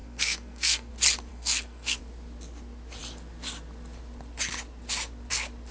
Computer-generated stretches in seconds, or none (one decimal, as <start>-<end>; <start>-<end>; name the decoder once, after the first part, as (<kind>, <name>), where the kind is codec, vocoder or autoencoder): 0.0-0.9 (codec, SNAC); 1.3-2.0